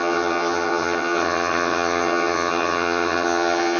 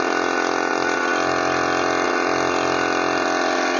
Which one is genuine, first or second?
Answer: second